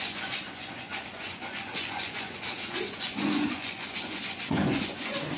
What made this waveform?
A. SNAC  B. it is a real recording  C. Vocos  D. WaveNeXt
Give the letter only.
C